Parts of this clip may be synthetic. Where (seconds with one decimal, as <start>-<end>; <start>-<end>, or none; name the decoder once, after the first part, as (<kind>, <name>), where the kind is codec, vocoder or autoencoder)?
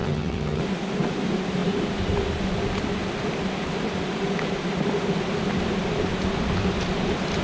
0.0-0.6 (vocoder, HiFi-GAN)